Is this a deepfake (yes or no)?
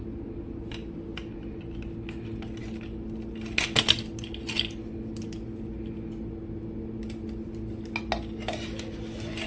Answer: no